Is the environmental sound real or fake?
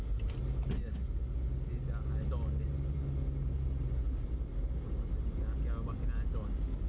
real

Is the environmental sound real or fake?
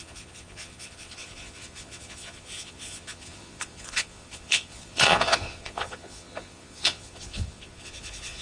fake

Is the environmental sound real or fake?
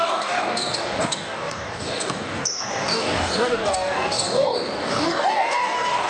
fake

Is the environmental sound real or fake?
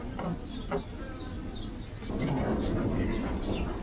real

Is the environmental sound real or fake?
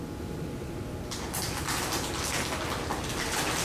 real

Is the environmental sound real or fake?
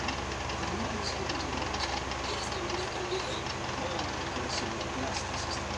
real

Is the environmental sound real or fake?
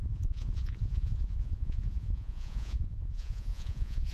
fake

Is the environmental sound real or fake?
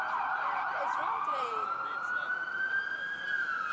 fake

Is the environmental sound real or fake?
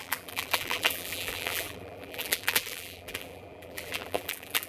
fake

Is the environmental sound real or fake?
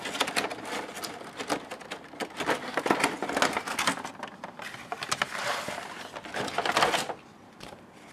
real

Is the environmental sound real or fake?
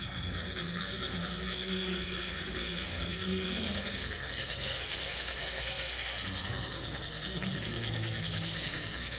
fake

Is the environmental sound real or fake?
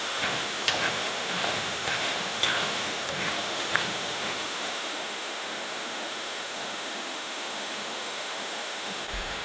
fake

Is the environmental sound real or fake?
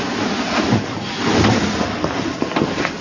real